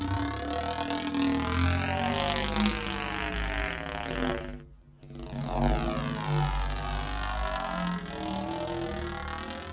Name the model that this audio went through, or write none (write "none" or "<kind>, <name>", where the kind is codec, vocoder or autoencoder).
none